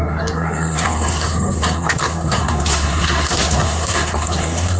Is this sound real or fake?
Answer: fake